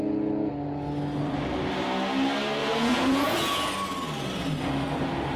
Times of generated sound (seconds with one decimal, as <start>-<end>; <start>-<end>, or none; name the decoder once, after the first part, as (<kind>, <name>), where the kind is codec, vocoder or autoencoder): 2.6-3.7 (vocoder, Vocos)